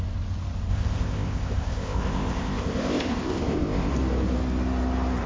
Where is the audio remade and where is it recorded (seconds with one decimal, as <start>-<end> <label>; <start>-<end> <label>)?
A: 0.0-0.7 recorded; 0.7-3.9 remade; 3.9-5.3 recorded